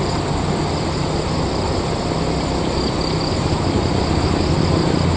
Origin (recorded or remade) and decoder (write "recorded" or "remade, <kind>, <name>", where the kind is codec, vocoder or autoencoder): recorded